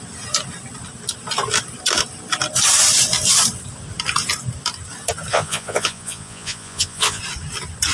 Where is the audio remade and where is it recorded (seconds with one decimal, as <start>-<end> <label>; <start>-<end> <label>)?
0.0-5.3 recorded; 5.3-7.2 remade; 7.2-7.9 recorded